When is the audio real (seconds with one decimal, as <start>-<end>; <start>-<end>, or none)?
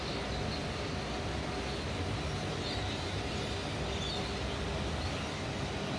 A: 0.0-6.0